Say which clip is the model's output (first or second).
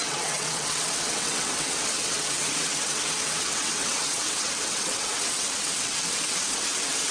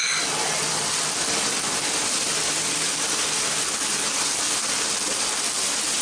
first